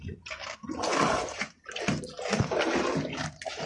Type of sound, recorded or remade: recorded